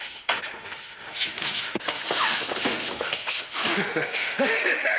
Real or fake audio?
fake